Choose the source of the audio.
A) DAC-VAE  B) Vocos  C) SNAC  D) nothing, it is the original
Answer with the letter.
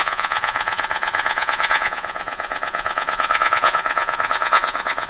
B